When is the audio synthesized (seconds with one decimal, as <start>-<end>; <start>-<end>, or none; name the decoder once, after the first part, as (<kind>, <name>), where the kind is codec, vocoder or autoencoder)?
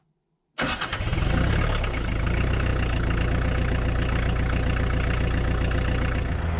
none